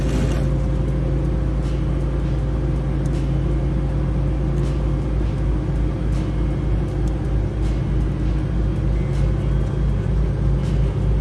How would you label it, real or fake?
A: real